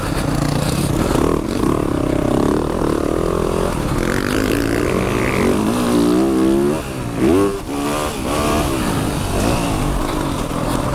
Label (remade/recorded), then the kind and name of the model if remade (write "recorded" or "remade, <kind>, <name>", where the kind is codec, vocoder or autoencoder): recorded